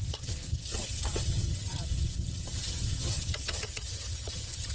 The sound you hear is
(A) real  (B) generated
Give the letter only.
B